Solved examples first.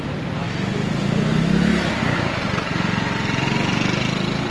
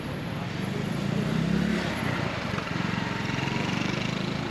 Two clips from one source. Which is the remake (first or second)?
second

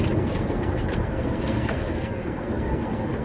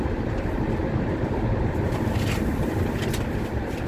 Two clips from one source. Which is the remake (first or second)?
first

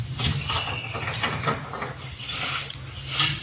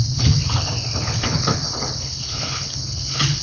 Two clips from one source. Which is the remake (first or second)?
second